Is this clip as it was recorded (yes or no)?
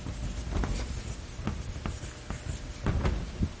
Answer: yes